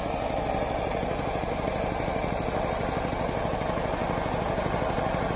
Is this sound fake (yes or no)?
no